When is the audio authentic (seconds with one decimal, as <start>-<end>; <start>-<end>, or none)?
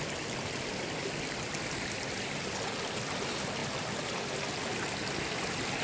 0.0-5.8